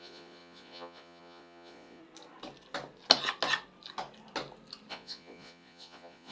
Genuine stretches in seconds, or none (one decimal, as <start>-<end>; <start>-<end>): 2.0-4.9